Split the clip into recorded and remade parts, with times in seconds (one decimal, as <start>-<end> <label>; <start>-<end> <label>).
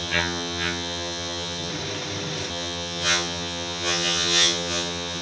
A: 0.0-1.7 remade; 1.7-2.5 recorded; 2.5-5.2 remade